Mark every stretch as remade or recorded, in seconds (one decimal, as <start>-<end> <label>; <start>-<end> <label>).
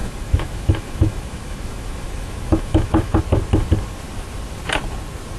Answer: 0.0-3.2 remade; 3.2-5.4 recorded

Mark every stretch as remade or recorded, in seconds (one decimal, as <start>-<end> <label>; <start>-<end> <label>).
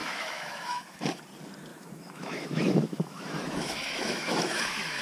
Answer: 0.0-1.2 remade; 1.2-1.7 recorded; 1.7-5.0 remade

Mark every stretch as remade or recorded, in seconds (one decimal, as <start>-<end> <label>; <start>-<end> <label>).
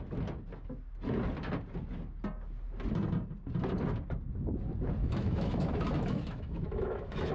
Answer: 0.0-5.0 recorded; 5.0-7.3 remade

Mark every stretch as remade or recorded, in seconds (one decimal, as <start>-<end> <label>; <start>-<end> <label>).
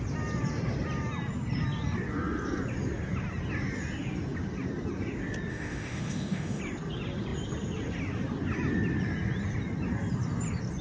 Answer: 0.0-5.5 recorded; 5.5-6.6 remade; 6.6-10.8 recorded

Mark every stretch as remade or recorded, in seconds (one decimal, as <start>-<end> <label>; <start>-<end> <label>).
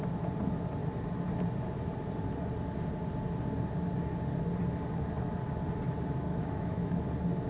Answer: 0.0-6.3 recorded; 6.3-7.0 remade; 7.0-7.5 recorded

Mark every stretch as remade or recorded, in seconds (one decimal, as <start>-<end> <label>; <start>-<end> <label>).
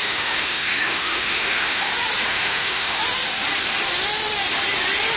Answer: 0.0-1.9 remade; 1.9-2.3 recorded; 2.3-3.0 remade; 3.0-5.2 recorded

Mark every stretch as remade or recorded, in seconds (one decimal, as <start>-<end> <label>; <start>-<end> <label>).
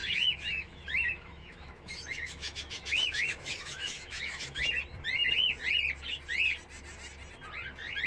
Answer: 0.0-4.6 remade; 4.6-8.1 recorded